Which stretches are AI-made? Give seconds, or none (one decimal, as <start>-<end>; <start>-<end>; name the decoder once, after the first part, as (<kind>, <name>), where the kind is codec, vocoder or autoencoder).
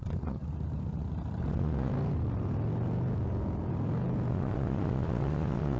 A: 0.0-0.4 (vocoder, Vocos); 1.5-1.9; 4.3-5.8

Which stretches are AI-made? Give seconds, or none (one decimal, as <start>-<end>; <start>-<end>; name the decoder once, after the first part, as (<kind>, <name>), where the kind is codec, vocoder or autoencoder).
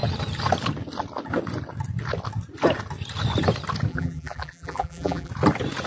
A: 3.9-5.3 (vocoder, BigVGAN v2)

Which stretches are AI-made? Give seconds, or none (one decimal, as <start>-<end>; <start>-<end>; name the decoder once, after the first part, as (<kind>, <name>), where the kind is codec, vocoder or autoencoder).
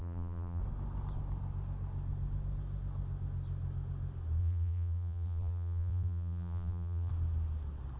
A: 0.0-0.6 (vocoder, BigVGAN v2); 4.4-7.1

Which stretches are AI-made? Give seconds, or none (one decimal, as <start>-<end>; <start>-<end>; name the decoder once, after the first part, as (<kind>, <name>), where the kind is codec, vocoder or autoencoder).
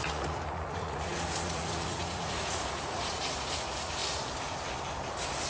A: 0.0-4.0 (vocoder, Vocos)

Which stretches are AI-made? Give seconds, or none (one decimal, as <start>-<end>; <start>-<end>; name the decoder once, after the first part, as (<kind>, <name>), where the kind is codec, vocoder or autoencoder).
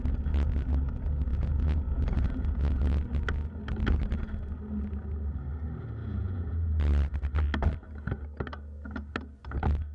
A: 1.3-2.8 (vocoder, Vocos); 6.0-6.8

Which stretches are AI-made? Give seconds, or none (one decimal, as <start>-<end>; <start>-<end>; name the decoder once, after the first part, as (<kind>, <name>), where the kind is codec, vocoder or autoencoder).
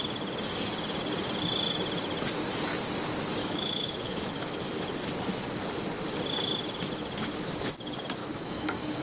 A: 3.4-4.8 (autoencoder, DAC-VAE); 8.2-9.0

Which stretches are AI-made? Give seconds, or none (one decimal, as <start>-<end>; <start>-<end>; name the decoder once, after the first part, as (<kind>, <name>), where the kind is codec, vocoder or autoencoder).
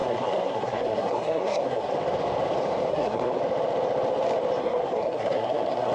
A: 0.0-1.9 (codec, SNAC); 2.9-3.4; 4.6-5.9